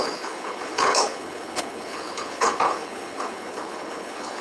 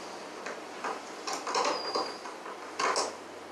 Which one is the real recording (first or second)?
second